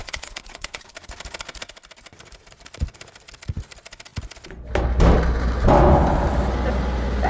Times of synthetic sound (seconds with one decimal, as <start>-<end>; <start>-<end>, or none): 0.0-0.9